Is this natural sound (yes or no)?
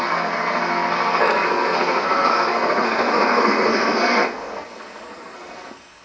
no